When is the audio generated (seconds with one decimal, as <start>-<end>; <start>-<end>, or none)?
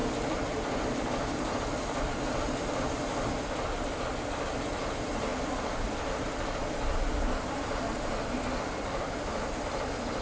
none